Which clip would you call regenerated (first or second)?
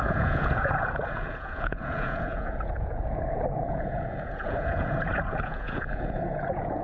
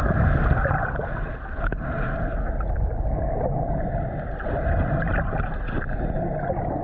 first